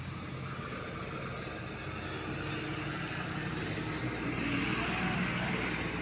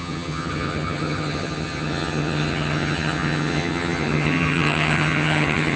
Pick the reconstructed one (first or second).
second